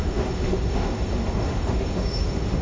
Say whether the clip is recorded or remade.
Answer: remade